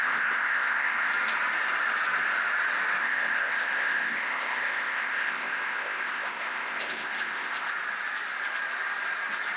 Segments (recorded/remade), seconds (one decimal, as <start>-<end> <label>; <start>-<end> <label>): 0.0-1.1 remade; 1.1-3.0 recorded; 3.0-7.7 remade; 7.7-9.6 recorded